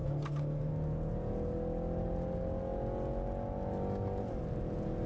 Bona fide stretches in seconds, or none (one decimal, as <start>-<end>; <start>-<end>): 0.7-5.1